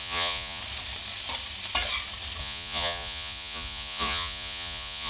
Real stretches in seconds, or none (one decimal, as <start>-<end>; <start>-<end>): 0.6-2.4